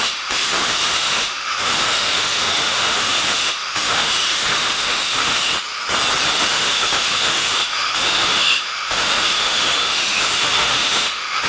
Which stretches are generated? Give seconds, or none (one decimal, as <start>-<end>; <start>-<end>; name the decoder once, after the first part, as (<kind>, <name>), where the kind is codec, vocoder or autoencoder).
0.0-5.5 (autoencoder, DAC-VAE); 6.3-11.5